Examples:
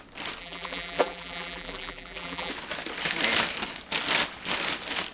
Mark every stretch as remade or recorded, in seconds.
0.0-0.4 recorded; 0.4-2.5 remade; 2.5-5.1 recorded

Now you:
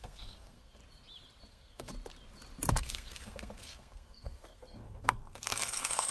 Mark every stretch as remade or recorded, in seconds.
0.0-0.8 remade; 0.8-1.5 recorded; 1.5-1.9 remade; 1.9-2.7 recorded; 2.7-6.1 remade

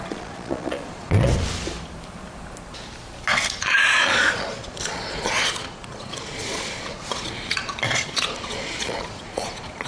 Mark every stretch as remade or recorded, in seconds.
0.0-1.3 remade; 1.3-3.6 recorded; 3.6-9.9 remade